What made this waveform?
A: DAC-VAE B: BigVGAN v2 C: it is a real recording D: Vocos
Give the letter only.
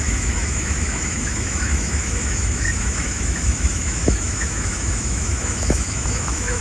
A